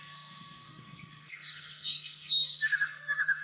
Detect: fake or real fake